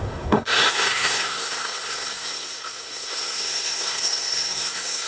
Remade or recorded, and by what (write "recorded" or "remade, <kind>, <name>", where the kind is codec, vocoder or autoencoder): remade, codec, SNAC